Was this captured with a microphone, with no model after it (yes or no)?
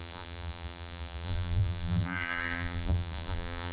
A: no